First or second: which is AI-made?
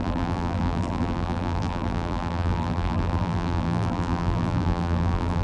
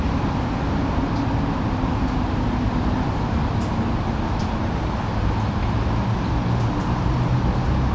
first